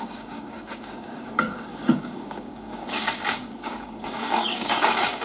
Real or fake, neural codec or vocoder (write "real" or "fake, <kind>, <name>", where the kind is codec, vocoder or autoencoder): fake, codec, DAC